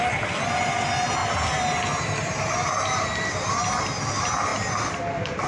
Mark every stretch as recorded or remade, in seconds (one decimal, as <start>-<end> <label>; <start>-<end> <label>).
0.0-5.5 recorded